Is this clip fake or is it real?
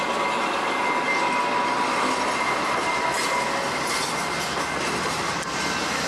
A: real